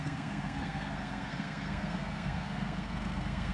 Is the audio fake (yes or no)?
yes